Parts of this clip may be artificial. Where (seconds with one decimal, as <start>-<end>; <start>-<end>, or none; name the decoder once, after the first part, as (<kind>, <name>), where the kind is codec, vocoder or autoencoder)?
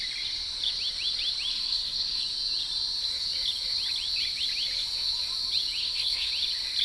1.5-2.2 (codec, SNAC); 5.8-6.3